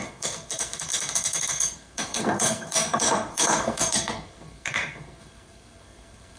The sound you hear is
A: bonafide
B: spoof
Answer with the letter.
B